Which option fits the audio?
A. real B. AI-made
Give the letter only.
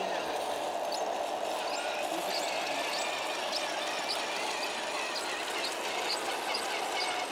A